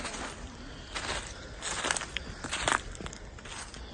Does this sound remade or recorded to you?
recorded